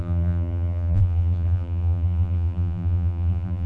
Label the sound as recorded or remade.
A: remade